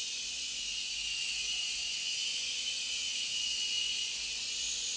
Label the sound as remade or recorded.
remade